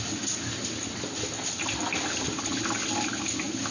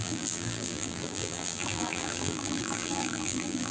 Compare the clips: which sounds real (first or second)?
first